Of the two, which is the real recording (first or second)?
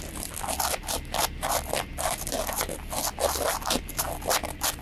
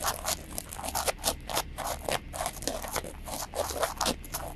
first